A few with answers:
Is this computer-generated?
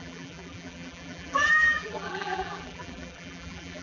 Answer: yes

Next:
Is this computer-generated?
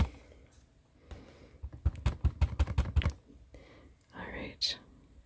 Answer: no